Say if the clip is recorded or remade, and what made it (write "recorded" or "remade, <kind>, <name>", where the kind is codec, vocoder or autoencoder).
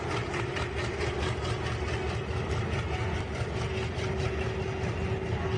recorded